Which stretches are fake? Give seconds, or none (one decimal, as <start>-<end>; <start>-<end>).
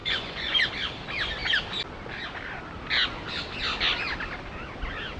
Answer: 0.0-0.7